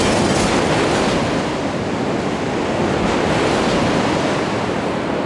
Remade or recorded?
recorded